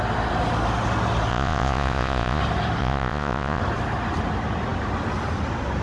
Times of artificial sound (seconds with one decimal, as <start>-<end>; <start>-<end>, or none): 1.3-2.4; 2.8-3.6